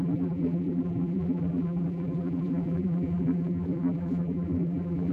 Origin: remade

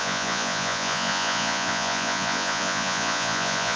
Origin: remade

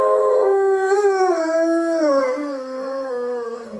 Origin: remade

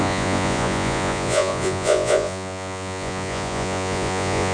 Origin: remade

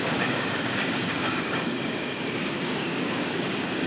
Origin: remade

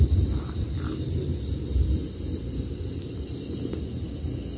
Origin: recorded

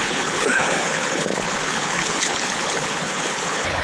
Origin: remade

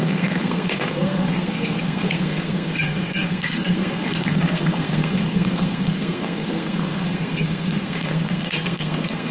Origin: remade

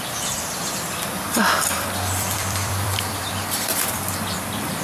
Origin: remade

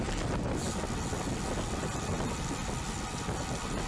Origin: recorded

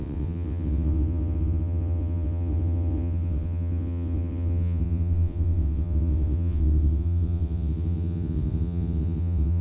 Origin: remade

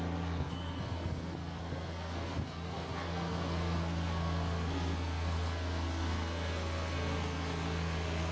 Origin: remade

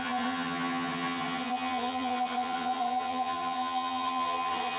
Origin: remade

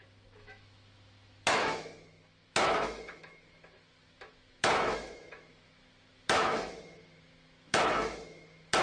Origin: remade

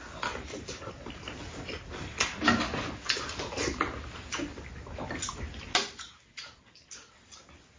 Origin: recorded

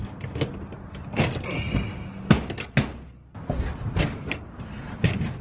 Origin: recorded